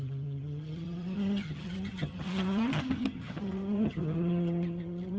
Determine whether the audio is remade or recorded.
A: remade